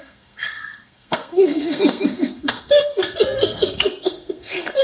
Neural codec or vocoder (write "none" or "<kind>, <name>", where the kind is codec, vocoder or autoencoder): codec, SNAC